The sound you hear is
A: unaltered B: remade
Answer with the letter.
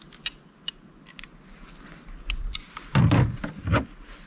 A